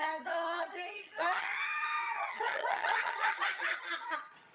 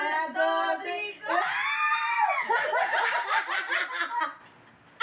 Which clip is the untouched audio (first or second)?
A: second